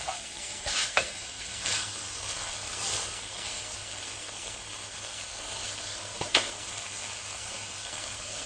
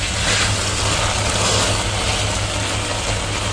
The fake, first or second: first